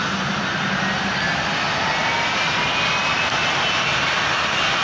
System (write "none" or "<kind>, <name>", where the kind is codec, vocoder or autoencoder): none